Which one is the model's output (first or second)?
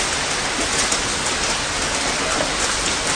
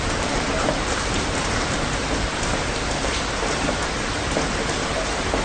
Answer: second